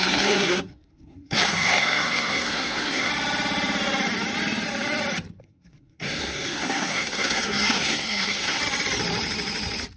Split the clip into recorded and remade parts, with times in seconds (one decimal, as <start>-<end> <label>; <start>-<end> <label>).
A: 0.0-3.1 remade; 3.1-5.4 recorded; 5.4-8.6 remade; 8.6-10.0 recorded